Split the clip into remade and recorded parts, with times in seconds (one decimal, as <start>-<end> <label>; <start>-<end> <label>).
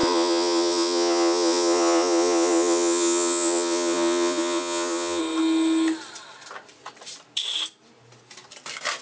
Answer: 0.0-5.2 remade; 5.2-9.0 recorded